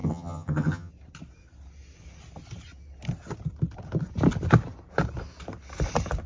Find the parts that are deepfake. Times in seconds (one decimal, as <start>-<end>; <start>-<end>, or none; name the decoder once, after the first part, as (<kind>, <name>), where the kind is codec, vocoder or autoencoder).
0.0-0.9 (vocoder, HiFi-GAN)